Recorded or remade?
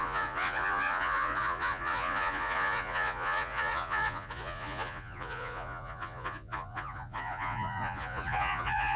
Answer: remade